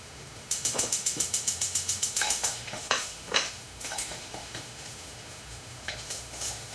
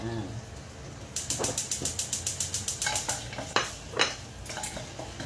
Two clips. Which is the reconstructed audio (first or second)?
first